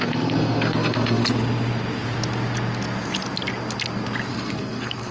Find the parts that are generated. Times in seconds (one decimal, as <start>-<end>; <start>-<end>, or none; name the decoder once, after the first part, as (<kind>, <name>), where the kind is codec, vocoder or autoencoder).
0.0-1.2 (codec, SNAC); 4.3-5.1